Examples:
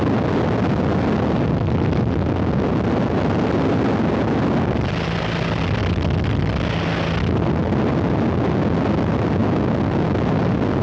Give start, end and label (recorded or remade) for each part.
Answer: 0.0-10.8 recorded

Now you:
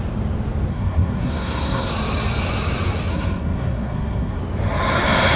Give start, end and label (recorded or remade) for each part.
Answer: 0.0-0.7 recorded; 0.7-1.9 remade; 1.9-3.1 recorded; 3.1-4.4 remade; 4.4-5.4 recorded

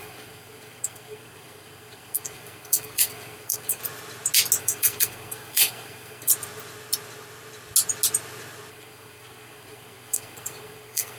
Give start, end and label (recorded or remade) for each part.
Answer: 0.0-3.8 remade; 3.8-4.6 recorded; 4.6-6.3 remade; 6.3-8.7 recorded; 8.7-11.2 remade

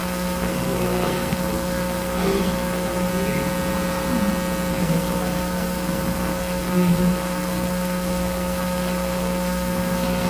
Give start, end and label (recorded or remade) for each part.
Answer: 0.0-3.1 remade; 3.1-4.7 recorded; 4.7-10.3 remade

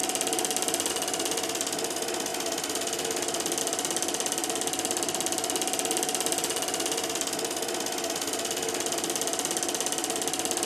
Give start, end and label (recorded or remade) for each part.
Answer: 0.0-10.7 recorded